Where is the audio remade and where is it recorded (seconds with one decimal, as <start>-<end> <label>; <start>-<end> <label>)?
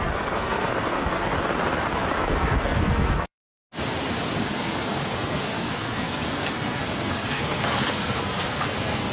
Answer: 0.0-1.3 remade; 1.3-2.2 recorded; 2.2-3.6 remade; 3.6-4.4 recorded; 4.4-9.1 remade